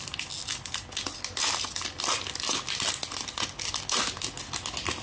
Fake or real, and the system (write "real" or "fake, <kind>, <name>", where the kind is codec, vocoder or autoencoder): real